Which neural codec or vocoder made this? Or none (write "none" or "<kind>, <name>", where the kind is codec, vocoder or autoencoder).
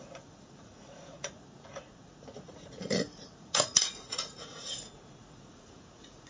vocoder, Vocos